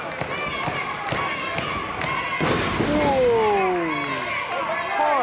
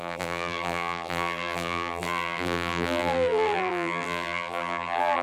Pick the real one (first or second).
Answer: first